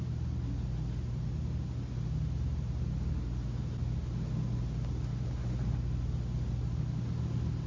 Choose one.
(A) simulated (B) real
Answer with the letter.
B